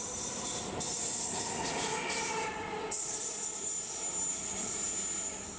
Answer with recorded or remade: recorded